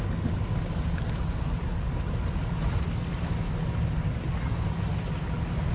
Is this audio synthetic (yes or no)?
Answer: no